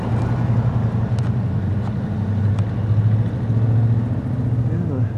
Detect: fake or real real